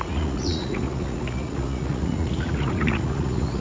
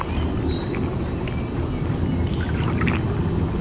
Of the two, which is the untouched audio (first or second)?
second